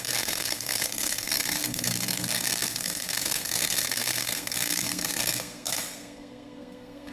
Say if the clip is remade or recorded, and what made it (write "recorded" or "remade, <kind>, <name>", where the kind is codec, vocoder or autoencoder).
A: remade, codec, SNAC